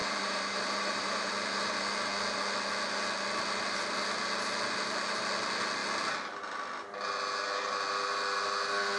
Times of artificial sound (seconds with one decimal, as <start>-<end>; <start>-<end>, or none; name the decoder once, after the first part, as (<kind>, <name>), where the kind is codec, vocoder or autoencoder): 0.0-1.3 (vocoder, BigVGAN v2)